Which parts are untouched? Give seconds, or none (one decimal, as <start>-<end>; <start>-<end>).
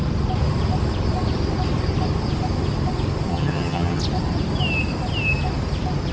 0.0-3.3; 4.0-6.1